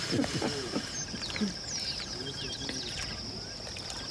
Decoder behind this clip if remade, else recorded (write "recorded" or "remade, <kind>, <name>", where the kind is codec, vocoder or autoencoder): recorded